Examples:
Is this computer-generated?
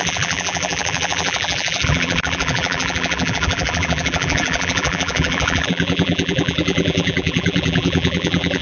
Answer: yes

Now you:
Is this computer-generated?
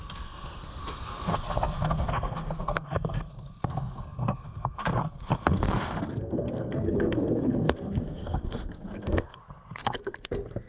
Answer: yes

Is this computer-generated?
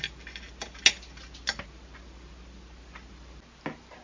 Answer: no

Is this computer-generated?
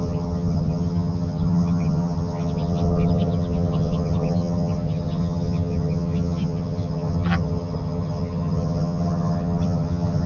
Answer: yes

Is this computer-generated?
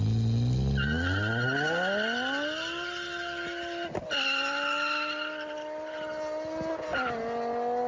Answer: no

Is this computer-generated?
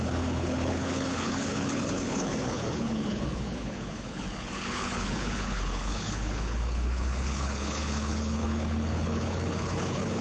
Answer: yes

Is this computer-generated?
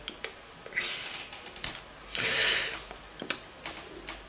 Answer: no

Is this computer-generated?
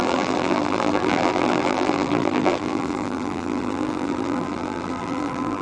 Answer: yes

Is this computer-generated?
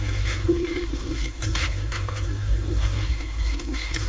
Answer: yes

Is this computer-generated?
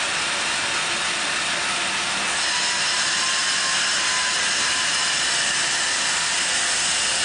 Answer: no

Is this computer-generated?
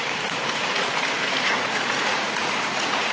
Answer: yes